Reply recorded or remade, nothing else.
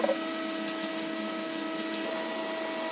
recorded